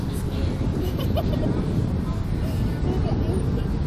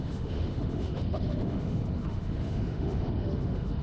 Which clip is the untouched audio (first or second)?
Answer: first